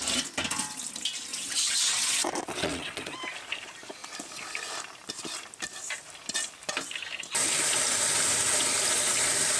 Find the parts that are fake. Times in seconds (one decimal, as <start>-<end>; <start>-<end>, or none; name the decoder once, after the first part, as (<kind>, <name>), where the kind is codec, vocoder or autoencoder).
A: 1.3-3.2 (vocoder, WaveNeXt)